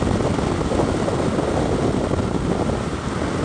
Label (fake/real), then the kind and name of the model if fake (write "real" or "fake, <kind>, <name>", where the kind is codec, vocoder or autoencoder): real